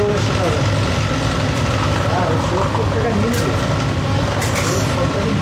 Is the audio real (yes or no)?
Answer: yes